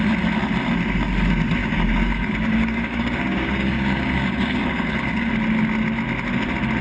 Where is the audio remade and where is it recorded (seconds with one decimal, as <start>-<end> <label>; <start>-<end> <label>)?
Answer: 0.0-1.6 recorded; 1.6-5.3 remade; 5.3-6.8 recorded